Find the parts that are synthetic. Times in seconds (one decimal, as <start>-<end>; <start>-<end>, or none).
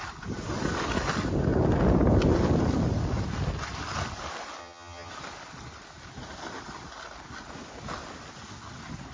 4.6-5.1